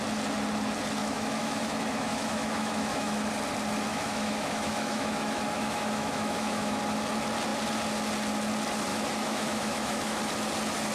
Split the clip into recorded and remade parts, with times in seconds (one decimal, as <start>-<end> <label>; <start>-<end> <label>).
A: 0.0-1.0 recorded; 1.0-3.3 remade; 3.3-3.9 recorded; 3.9-6.8 remade; 6.8-8.9 recorded; 8.9-10.2 remade; 10.2-10.9 recorded